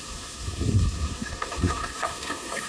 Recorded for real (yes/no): no